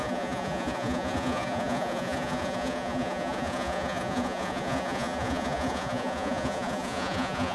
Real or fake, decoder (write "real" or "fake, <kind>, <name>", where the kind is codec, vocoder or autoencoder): fake, vocoder, Vocos